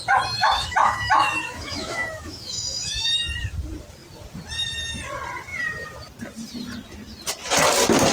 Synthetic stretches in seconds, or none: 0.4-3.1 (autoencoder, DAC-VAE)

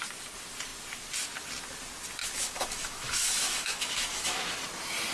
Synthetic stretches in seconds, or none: 2.2-4.6 (autoencoder, DAC-VAE)

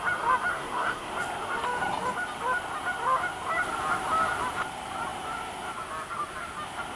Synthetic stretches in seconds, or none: 0.5-1.1 (codec, SNAC)

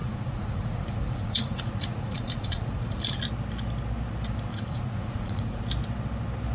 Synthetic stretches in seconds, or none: 0.0-3.2 (vocoder, Vocos); 4.5-5.6

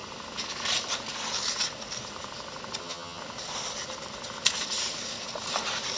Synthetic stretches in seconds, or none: 2.8-3.2 (vocoder, HiFi-GAN)

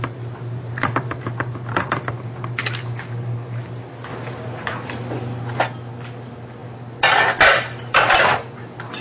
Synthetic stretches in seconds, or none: none

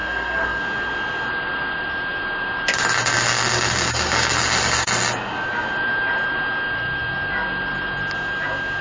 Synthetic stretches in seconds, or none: 0.0-0.6 (codec, SNAC)